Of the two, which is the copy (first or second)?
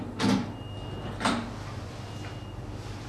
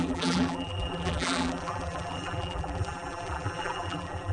second